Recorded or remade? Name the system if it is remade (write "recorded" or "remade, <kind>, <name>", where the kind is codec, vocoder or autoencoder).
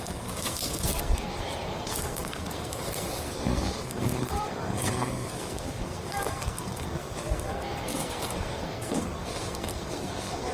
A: remade, codec, SNAC